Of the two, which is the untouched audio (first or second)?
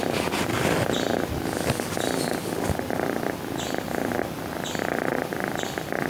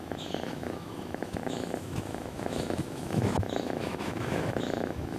first